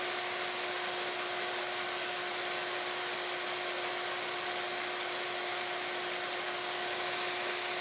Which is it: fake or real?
real